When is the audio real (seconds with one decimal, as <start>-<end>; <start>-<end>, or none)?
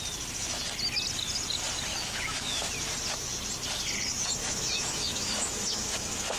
0.0-1.9; 2.7-4.4